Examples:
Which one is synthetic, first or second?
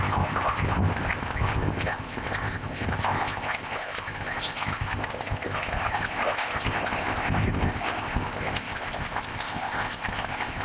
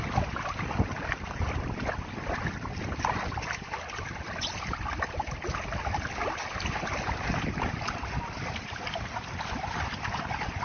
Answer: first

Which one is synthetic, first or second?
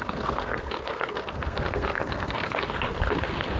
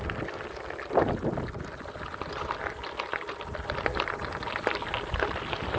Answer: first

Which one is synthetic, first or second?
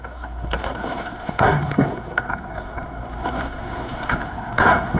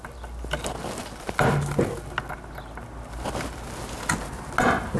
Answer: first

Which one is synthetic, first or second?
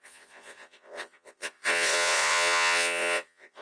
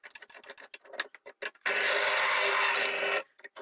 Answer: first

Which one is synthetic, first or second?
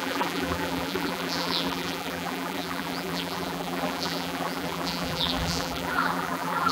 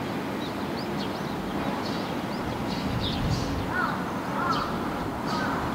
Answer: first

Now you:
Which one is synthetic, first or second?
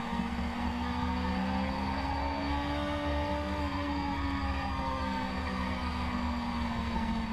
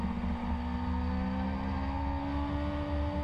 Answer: first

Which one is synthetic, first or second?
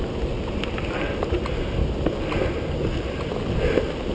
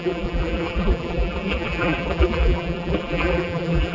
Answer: second